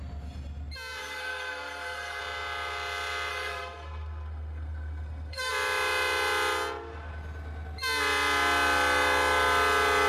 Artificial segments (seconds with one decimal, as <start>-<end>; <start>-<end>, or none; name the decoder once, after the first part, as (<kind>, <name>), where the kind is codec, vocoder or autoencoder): 1.0-2.2 (codec, SNAC); 3.3-5.5